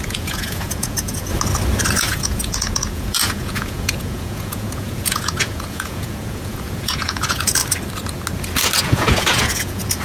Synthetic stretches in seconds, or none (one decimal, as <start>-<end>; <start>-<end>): 0.0-1.3; 2.0-7.6; 8.8-10.0

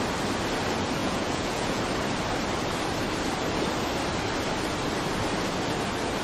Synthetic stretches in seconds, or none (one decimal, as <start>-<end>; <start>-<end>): 1.0-1.8

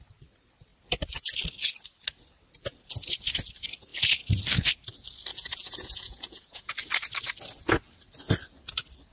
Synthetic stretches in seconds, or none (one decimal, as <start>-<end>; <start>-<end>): 5.3-6.7

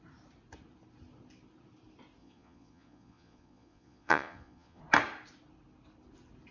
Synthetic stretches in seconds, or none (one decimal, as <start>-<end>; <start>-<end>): 2.2-4.8

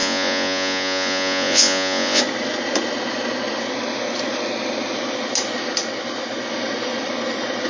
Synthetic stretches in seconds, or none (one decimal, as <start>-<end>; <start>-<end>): 0.0-2.2

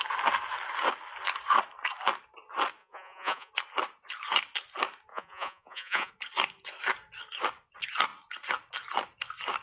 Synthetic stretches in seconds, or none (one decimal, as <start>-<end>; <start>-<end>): 2.8-3.5; 5.1-6.1